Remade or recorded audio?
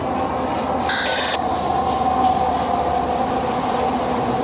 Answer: recorded